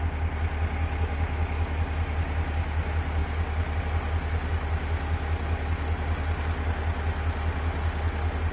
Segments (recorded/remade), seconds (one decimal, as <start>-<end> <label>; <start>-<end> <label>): 0.0-8.5 recorded